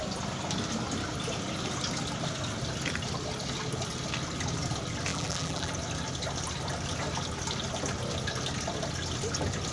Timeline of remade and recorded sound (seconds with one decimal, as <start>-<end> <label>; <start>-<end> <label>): 0.0-5.1 recorded; 5.1-5.7 remade; 5.7-9.7 recorded